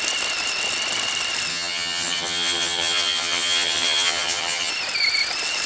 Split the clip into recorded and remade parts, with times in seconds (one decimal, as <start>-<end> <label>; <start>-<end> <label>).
0.0-1.5 recorded; 1.5-4.7 remade; 4.7-5.7 recorded